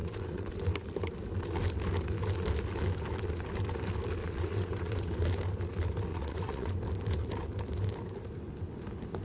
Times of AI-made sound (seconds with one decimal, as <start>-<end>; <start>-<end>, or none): 0.0-0.6; 4.2-5.1; 6.1-6.7